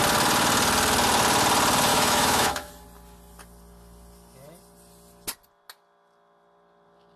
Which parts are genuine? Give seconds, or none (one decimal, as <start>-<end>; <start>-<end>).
0.0-1.9; 2.7-7.2